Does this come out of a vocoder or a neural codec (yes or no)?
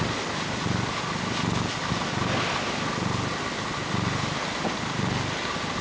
no